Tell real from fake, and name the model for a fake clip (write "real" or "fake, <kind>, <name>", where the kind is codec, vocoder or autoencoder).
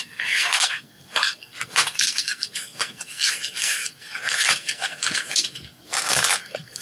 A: fake, codec, SNAC